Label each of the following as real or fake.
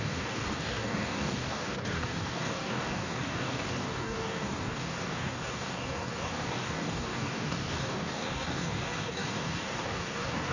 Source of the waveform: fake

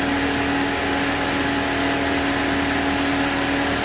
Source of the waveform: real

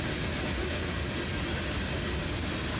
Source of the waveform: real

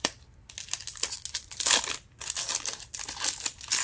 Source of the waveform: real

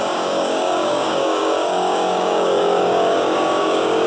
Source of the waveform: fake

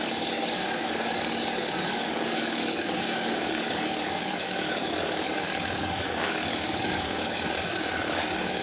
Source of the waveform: fake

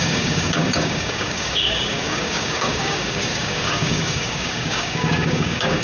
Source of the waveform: fake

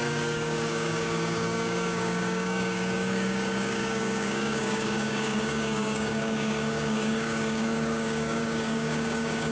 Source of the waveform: fake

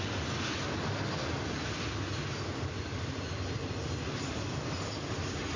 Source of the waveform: real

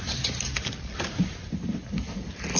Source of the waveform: real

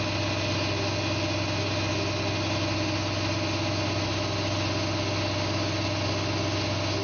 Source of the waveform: real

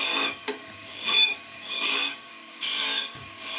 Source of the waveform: fake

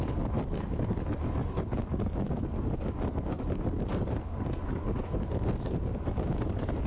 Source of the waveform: fake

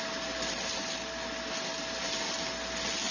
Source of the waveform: real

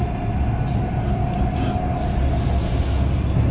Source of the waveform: real